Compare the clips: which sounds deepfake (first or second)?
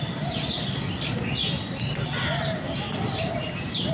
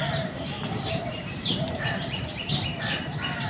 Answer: second